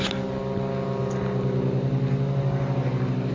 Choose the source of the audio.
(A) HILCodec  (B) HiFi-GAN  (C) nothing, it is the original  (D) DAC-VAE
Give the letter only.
C